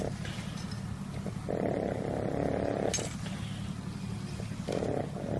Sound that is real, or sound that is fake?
real